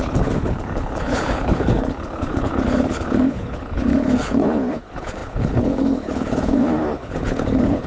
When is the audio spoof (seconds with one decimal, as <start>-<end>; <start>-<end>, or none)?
0.0-7.9